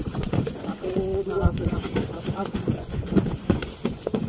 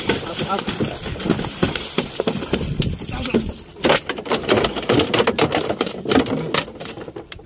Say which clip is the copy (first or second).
first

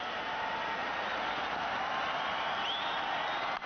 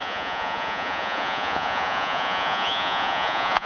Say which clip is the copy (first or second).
second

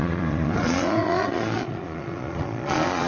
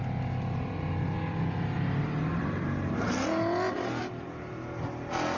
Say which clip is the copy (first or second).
first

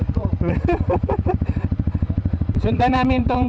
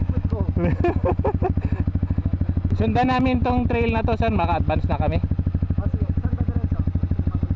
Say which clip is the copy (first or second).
first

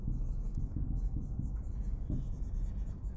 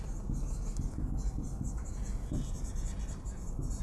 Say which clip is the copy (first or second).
first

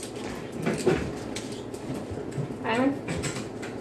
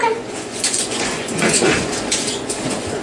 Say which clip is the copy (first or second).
second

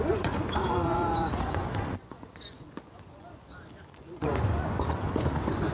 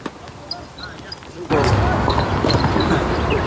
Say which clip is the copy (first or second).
first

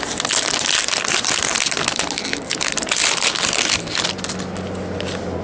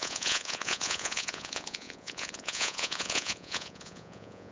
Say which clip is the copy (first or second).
second